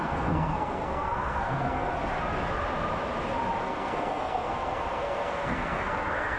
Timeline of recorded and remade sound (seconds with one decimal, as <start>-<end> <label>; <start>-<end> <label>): 0.0-1.9 remade; 1.9-3.6 recorded; 3.6-6.4 remade